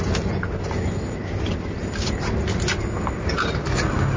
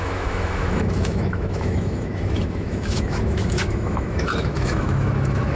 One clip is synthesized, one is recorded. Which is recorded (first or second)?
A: first